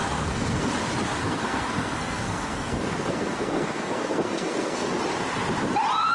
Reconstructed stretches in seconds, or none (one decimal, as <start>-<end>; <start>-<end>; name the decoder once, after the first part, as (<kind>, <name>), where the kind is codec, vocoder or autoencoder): 0.0-0.7 (codec, SNAC); 1.2-4.9